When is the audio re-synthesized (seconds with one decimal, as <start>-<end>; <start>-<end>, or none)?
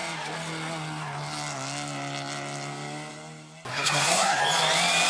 3.7-4.4